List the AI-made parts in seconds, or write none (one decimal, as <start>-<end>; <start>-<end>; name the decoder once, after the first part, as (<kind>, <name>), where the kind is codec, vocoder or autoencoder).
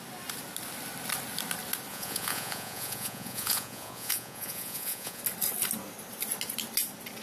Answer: 1.9-5.2 (vocoder, Vocos)